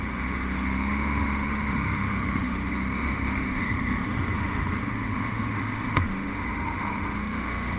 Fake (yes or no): yes